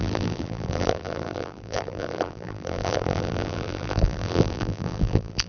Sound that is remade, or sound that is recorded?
remade